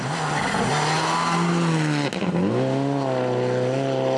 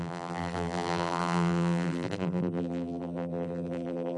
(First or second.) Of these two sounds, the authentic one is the first